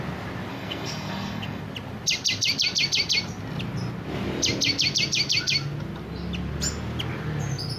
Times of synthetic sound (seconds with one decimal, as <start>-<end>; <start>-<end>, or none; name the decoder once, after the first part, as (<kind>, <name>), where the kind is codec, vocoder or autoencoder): 0.5-1.6 (codec, SNAC)